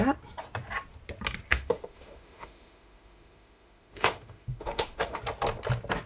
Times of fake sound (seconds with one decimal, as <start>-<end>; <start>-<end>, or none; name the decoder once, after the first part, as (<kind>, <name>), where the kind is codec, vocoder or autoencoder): 1.5-5.2 (autoencoder, DAC-VAE)